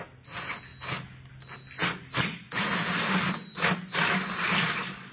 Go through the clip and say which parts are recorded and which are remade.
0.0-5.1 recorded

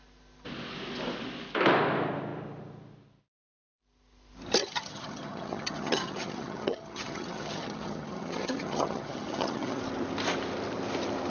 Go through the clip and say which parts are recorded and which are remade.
0.0-4.6 recorded; 4.6-9.8 remade; 9.8-11.3 recorded

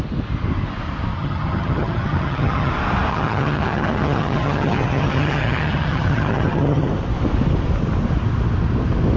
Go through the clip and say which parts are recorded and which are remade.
0.0-1.1 recorded; 1.1-2.7 remade; 2.7-3.1 recorded; 3.1-6.9 remade; 6.9-9.2 recorded

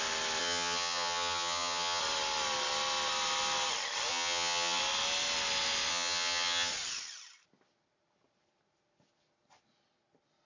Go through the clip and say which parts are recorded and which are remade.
0.0-0.4 recorded; 0.4-2.0 remade; 2.0-4.1 recorded; 4.1-4.8 remade; 4.8-5.9 recorded; 5.9-6.7 remade; 6.7-10.4 recorded